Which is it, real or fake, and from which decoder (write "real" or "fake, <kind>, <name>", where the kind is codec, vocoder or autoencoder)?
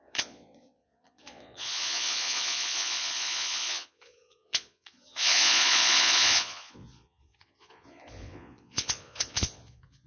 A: fake, vocoder, Vocos